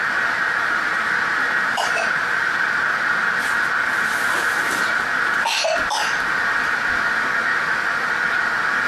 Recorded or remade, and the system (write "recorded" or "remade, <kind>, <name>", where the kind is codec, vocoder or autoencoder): recorded